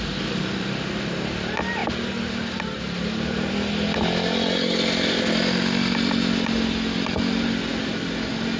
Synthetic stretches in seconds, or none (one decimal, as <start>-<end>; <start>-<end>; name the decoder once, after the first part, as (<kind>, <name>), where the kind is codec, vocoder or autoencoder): none